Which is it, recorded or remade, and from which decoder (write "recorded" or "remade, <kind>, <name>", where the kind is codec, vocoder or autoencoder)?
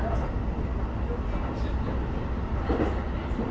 recorded